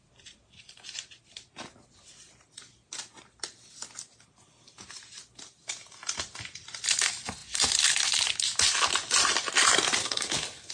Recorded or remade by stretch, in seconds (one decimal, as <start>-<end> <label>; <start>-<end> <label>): 0.0-10.0 recorded; 10.0-10.7 remade